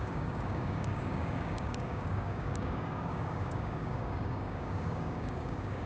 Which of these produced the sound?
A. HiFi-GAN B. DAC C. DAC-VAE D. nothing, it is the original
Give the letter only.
B